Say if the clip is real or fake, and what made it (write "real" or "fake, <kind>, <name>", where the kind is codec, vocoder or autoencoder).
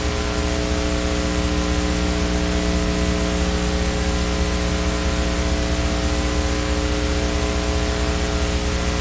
real